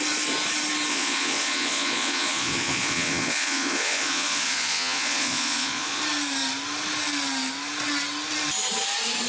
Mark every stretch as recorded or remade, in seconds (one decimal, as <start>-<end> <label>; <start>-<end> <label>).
0.0-0.9 recorded; 0.9-6.0 remade; 6.0-9.3 recorded